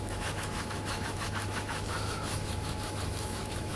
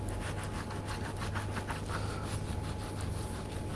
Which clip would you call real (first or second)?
second